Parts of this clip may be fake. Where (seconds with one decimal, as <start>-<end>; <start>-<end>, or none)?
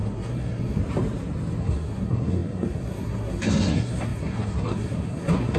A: 0.0-0.8; 1.6-5.6